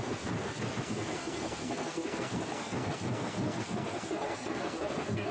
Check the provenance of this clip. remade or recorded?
remade